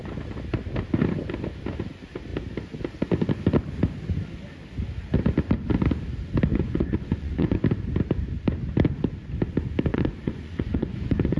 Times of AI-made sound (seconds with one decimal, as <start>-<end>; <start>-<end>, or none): 6.5-7.6; 9.9-11.4